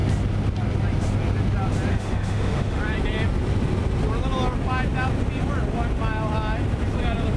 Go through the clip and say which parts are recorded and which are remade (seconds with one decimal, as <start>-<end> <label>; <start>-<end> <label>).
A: 0.0-1.9 recorded; 1.9-2.8 remade; 2.8-7.4 recorded